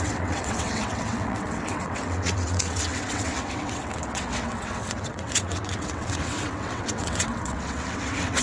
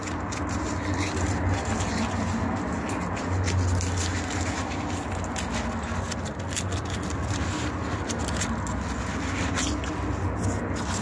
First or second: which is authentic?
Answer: second